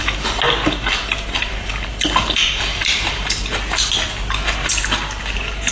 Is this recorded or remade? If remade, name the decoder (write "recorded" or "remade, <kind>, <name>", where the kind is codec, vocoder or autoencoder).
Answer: recorded